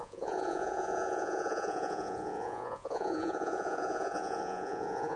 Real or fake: fake